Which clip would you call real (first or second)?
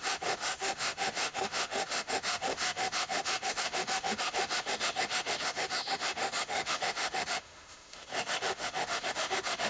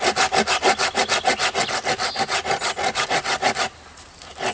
second